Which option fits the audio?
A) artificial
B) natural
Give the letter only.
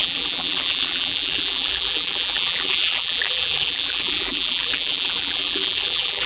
A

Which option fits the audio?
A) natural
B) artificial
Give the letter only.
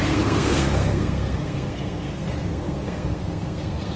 B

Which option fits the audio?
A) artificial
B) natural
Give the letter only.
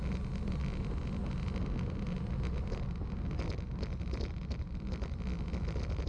B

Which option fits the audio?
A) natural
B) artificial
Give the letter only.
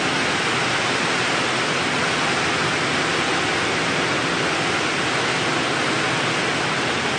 A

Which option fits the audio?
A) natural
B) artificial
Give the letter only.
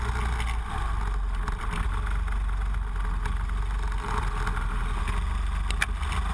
A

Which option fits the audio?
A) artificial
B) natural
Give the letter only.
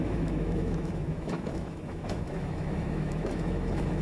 A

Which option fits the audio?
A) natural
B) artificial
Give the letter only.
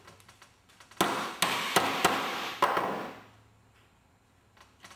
A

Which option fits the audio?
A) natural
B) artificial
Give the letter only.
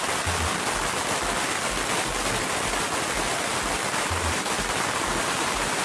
A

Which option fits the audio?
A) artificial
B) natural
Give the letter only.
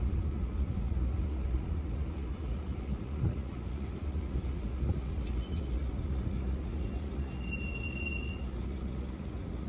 A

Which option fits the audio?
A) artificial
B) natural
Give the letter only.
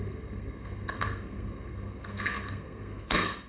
A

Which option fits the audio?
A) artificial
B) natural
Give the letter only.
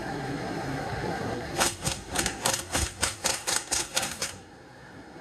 A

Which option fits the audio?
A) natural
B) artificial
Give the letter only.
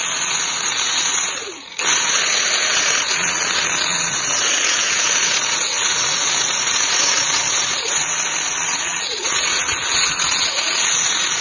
B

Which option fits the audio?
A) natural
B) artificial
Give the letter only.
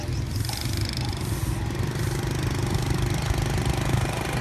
A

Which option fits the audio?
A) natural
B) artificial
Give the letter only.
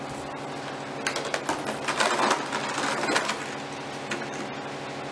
A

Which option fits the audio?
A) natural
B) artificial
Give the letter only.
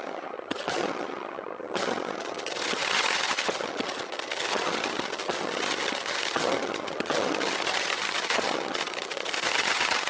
B